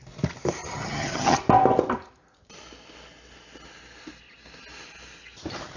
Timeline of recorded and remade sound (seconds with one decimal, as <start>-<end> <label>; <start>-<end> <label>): 0.0-0.6 recorded; 0.6-1.4 remade; 1.4-5.8 recorded